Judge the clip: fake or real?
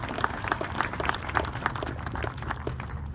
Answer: real